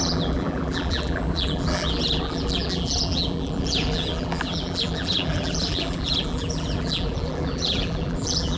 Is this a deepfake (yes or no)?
yes